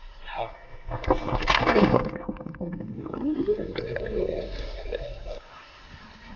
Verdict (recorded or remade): remade